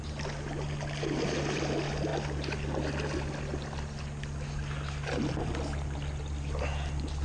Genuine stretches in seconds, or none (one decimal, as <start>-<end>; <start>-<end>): 0.0-7.2